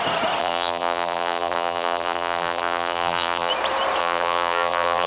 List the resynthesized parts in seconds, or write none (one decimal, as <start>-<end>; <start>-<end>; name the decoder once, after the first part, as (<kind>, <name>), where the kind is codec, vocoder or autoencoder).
0.4-3.5 (vocoder, BigVGAN v2); 4.0-5.1